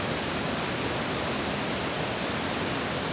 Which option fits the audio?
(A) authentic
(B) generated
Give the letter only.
A